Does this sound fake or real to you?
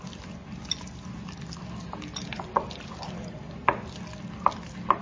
real